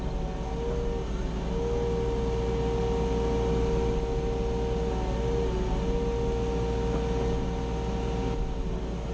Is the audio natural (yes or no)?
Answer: yes